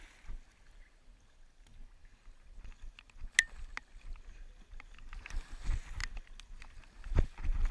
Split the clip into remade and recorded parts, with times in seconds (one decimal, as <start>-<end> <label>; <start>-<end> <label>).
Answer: 0.0-7.7 recorded